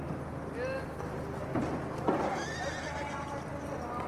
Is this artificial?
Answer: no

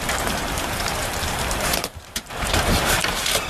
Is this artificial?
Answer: yes